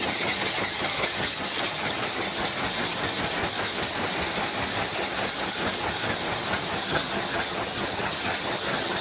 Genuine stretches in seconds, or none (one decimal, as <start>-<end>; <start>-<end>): 2.5-4.8; 5.6-6.6